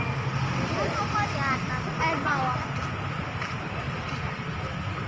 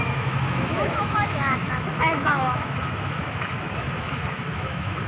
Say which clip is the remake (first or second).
second